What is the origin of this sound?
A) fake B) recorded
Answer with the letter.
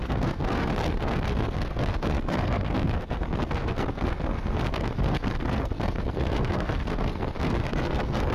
A